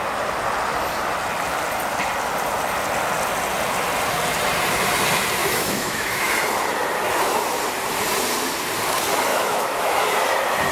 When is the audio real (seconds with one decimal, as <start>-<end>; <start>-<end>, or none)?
0.0-5.4; 6.3-9.3; 10.0-10.7